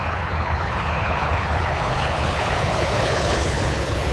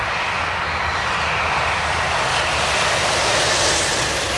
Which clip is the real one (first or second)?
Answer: second